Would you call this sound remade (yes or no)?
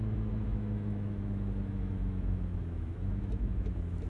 yes